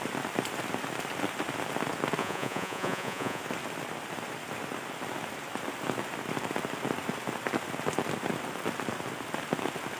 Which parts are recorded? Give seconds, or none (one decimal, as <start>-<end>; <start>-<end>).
0.0-2.2; 3.4-10.0